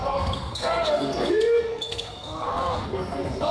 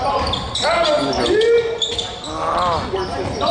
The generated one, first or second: first